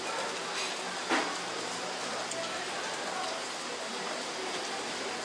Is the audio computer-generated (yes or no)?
no